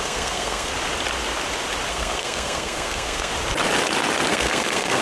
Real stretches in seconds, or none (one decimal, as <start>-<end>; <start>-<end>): 0.7-1.9; 3.3-4.3